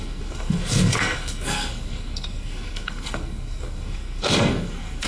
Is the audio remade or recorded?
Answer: remade